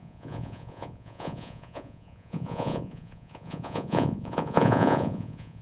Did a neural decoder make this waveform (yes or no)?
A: yes